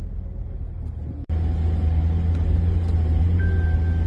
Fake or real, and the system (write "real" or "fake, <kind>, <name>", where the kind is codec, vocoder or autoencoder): real